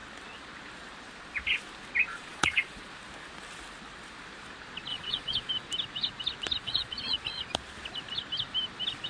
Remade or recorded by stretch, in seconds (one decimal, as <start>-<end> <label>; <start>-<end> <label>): 0.0-2.1 recorded; 2.1-2.9 remade; 2.9-4.9 recorded; 4.9-5.5 remade; 5.5-6.6 recorded; 6.6-7.4 remade; 7.4-9.1 recorded

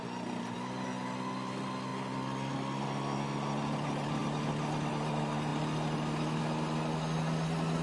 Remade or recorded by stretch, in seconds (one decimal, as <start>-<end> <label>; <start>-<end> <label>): 0.0-7.8 recorded

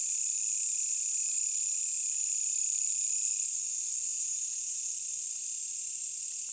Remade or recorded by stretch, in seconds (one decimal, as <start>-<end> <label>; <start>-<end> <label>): 0.0-4.1 recorded; 4.1-4.9 remade; 4.9-6.5 recorded